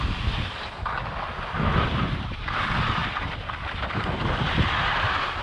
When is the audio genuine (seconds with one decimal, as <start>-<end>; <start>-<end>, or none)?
0.0-5.4